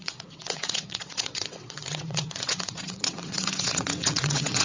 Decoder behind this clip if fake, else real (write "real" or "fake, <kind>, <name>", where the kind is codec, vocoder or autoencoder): fake, vocoder, WaveNeXt